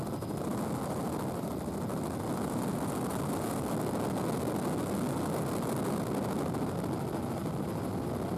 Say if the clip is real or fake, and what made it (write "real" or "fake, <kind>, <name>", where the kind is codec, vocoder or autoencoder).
real